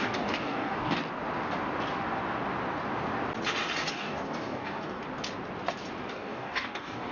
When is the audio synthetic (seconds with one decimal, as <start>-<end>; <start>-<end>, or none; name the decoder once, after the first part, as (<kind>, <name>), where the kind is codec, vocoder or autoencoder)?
0.0-1.0 (codec, DAC); 3.9-5.0; 6.1-7.1